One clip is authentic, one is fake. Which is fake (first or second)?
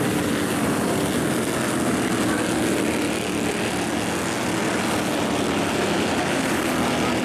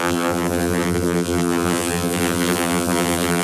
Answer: second